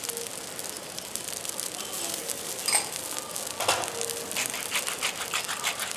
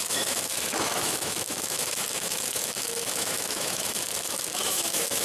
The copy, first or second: second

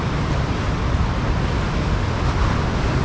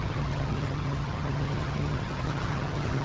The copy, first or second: second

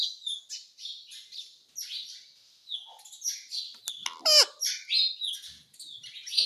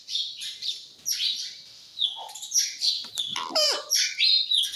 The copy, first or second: second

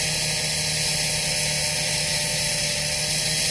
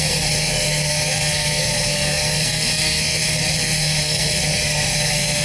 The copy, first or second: second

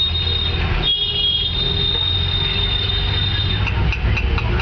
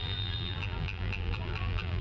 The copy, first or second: second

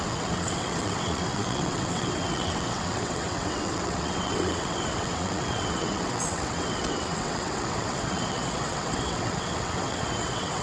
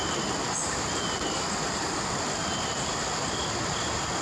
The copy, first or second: first